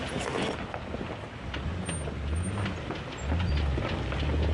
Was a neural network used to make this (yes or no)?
no